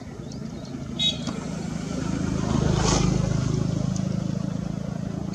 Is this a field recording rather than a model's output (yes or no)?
yes